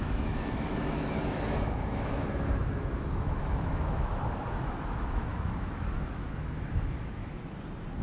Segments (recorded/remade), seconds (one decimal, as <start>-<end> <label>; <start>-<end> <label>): 0.0-7.2 remade; 7.2-8.0 recorded